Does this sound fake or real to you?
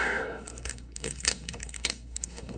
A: fake